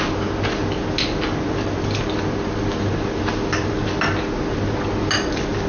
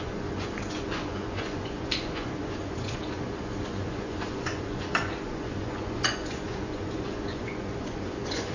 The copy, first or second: second